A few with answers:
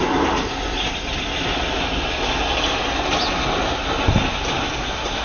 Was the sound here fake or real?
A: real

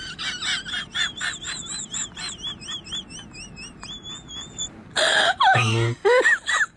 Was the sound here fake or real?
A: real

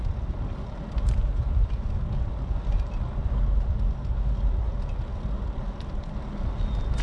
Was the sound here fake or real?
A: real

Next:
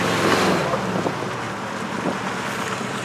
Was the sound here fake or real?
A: real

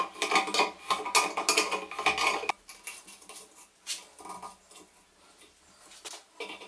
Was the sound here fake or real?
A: real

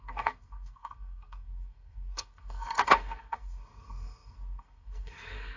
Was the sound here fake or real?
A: fake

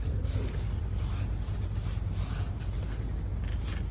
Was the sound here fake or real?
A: real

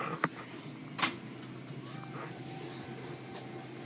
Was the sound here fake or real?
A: real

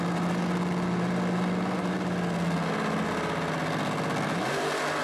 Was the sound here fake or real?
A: real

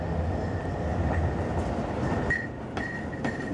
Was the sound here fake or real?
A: real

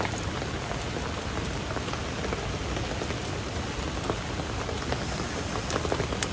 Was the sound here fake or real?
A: real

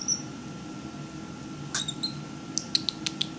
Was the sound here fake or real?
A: real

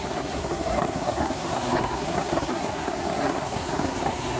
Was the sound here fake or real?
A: fake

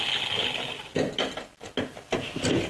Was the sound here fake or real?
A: real